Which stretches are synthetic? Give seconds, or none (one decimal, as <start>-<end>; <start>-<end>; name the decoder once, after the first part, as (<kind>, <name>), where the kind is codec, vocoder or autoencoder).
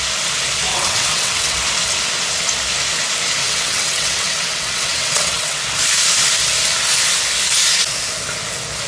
0.7-1.6 (vocoder, WaveNeXt); 3.4-5.6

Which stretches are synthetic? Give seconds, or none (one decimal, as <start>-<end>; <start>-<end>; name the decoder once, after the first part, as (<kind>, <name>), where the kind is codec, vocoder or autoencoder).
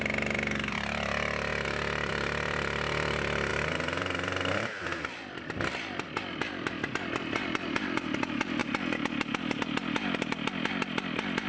0.0-1.5 (vocoder, BigVGAN v2); 2.1-8.6; 10.7-11.5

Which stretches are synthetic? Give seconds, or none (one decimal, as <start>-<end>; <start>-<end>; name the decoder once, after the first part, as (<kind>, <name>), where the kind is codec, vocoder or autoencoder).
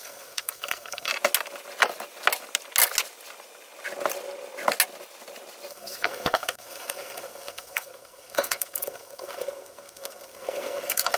0.0-1.1 (codec, SNAC); 5.7-11.2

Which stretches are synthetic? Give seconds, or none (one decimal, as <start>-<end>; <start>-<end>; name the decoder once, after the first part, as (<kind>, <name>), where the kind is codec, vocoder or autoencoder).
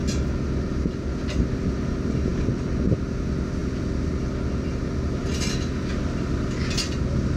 none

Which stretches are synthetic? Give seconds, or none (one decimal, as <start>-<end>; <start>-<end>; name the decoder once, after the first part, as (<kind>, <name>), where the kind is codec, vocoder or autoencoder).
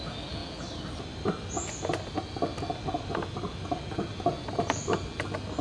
none